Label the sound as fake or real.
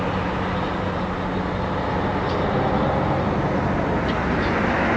real